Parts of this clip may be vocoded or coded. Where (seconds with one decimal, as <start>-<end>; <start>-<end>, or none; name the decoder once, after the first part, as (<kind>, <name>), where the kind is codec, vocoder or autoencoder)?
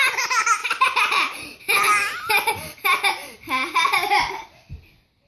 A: 3.2-4.3 (vocoder, BigVGAN v2)